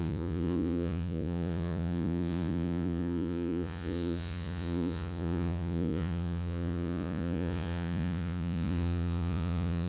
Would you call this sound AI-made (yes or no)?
yes